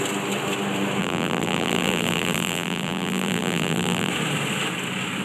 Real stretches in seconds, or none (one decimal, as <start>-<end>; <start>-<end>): 0.0-1.0; 4.1-5.2